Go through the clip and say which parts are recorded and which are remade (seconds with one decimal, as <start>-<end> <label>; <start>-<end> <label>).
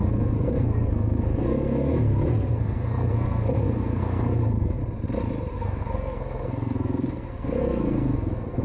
0.0-4.8 remade; 4.8-5.5 recorded; 5.5-8.6 remade